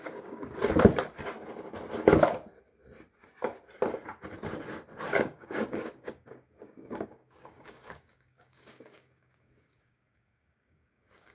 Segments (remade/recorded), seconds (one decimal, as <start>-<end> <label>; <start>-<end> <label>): 0.0-0.6 remade; 0.6-5.1 recorded; 5.1-11.3 remade